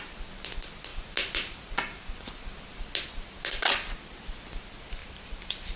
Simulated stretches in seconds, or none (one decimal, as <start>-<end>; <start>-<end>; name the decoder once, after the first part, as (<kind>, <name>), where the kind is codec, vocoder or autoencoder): 0.9-2.8 (vocoder, BigVGAN v2); 5.0-5.8